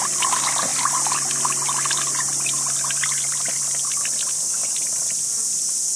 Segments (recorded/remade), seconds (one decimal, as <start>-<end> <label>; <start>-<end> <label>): 0.0-6.0 recorded